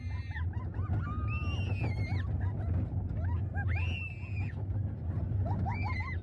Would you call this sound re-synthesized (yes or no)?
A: no